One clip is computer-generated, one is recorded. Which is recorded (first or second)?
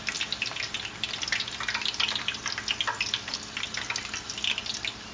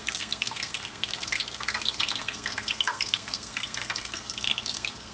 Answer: first